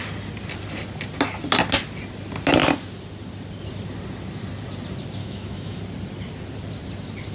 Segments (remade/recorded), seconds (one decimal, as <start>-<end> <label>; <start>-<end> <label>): 0.0-5.2 recorded; 5.2-5.8 remade; 5.8-7.3 recorded